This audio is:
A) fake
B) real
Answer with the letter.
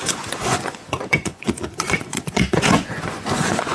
A